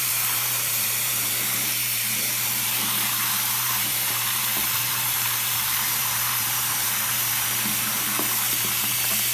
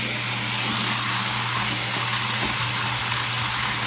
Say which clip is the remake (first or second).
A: first